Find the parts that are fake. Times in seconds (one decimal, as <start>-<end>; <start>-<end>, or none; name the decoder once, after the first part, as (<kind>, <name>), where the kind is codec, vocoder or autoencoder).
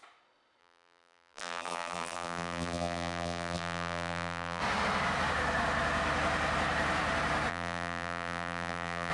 0.6-4.6 (vocoder, BigVGAN v2); 7.5-9.1